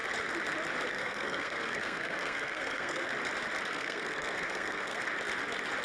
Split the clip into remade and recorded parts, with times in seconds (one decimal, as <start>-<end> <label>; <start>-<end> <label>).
0.0-0.9 recorded; 0.9-3.1 remade; 3.1-3.7 recorded; 3.7-5.0 remade; 5.0-5.8 recorded